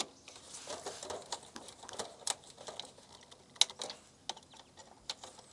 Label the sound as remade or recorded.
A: recorded